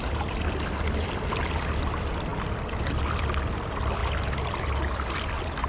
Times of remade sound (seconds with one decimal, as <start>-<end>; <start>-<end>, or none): 0.0-2.3; 3.1-5.7